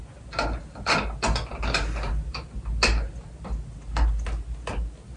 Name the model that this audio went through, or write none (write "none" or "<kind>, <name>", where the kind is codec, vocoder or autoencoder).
none